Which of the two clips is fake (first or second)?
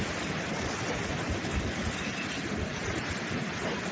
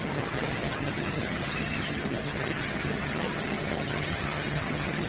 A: second